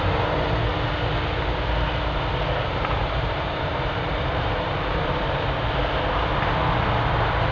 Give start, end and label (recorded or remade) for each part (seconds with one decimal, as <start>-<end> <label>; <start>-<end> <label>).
0.0-2.7 recorded; 2.7-5.8 remade; 5.8-7.5 recorded